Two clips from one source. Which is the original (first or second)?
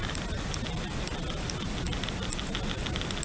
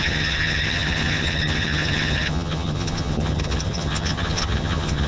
first